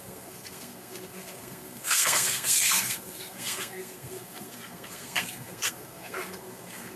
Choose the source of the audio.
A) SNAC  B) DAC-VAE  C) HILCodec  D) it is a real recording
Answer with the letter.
A